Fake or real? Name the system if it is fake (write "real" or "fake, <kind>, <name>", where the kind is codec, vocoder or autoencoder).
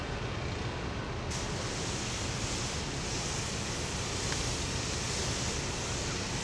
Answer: real